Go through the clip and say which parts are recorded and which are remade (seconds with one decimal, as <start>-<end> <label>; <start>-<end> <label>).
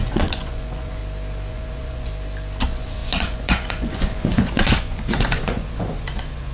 0.0-1.0 remade; 1.0-1.5 recorded; 1.5-2.1 remade; 2.1-2.6 recorded; 2.6-6.5 remade